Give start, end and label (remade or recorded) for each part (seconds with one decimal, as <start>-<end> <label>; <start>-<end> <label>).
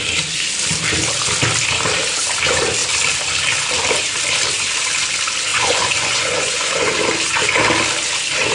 0.0-5.5 recorded; 5.5-6.9 remade; 6.9-8.5 recorded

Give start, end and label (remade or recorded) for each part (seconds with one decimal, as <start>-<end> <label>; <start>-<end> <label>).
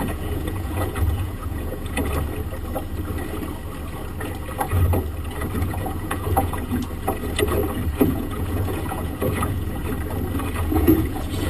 0.0-2.0 remade; 2.0-5.6 recorded; 5.6-6.9 remade; 6.9-7.9 recorded; 7.9-9.8 remade; 9.8-10.4 recorded; 10.4-11.5 remade